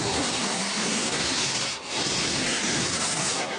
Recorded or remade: remade